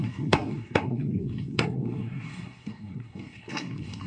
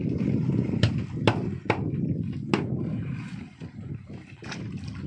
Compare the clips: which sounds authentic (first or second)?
second